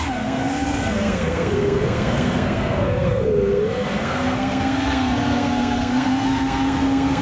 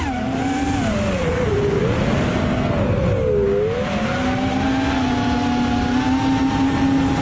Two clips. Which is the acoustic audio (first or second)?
second